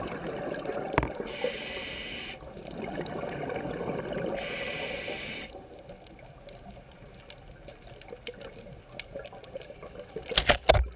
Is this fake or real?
real